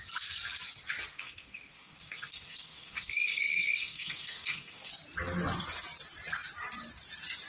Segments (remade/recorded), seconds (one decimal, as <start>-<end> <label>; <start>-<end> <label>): 0.0-1.1 recorded; 1.1-4.9 remade; 4.9-7.5 recorded

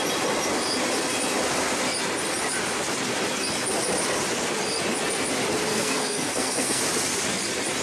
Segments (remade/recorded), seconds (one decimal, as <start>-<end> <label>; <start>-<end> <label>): 0.0-5.7 recorded; 5.7-6.8 remade; 6.8-7.8 recorded

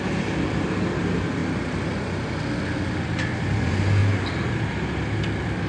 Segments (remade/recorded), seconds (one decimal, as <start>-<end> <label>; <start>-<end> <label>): 0.0-5.7 recorded

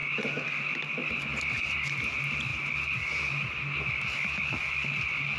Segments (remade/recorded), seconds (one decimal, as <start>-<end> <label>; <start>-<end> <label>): 0.0-5.4 recorded

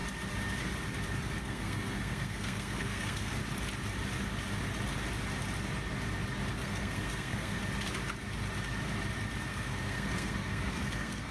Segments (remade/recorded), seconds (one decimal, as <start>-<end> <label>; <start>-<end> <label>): 0.0-1.4 recorded; 1.4-3.4 remade; 3.4-6.5 recorded; 6.5-7.6 remade; 7.6-9.5 recorded; 9.5-11.3 remade

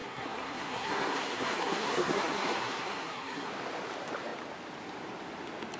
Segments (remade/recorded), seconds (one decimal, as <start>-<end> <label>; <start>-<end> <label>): 0.0-3.5 remade; 3.5-5.8 recorded

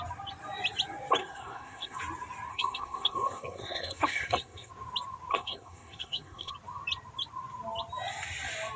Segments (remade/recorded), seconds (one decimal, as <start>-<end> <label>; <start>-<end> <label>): 0.0-1.2 recorded; 1.2-2.0 remade; 2.0-2.5 recorded; 2.5-4.7 remade; 4.7-5.3 recorded; 5.3-6.5 remade; 6.5-8.8 recorded